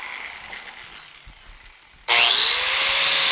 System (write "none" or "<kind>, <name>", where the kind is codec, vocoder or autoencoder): none